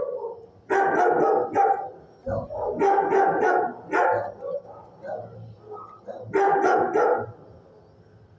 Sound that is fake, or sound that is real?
real